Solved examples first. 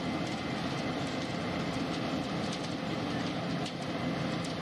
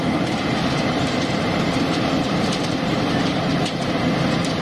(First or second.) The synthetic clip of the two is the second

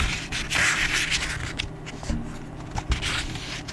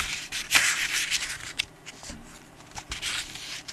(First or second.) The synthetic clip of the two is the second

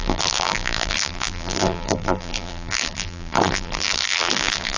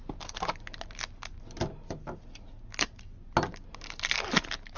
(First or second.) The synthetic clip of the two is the first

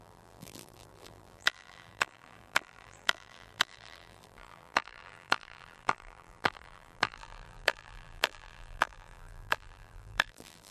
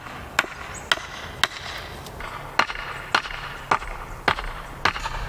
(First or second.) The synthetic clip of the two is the first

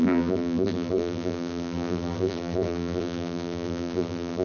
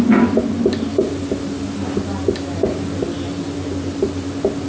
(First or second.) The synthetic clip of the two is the first